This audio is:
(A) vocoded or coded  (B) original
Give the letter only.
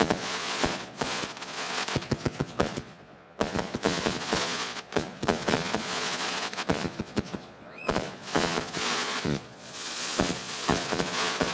A